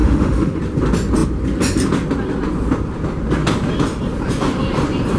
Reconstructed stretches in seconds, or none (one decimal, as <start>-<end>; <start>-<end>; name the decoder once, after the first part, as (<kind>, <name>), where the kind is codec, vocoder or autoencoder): 0.0-0.6 (autoencoder, DAC-VAE)